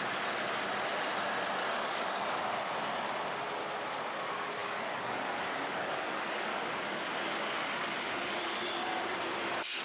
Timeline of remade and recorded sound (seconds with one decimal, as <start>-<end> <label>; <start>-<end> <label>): 0.0-1.6 recorded; 1.6-2.7 remade; 2.7-4.6 recorded; 4.6-9.2 remade; 9.2-9.8 recorded